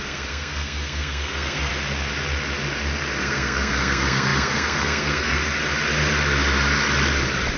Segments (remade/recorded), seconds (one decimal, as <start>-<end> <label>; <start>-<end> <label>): 0.0-1.7 remade; 1.7-3.2 recorded; 3.2-5.4 remade; 5.4-7.6 recorded